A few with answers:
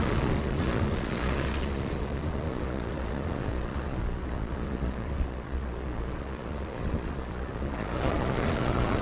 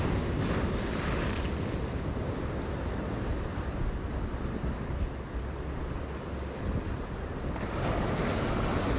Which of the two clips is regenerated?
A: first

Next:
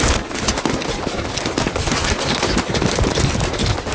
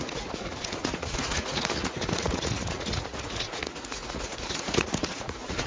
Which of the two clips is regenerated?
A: second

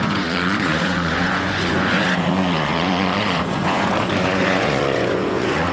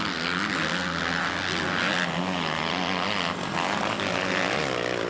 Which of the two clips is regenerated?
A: first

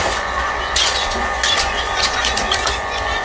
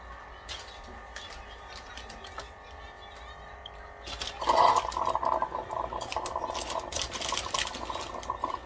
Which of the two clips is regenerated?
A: first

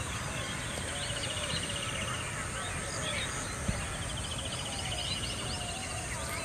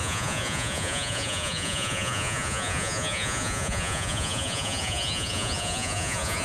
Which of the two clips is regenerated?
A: second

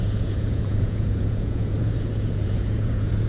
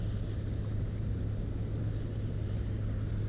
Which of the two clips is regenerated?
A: first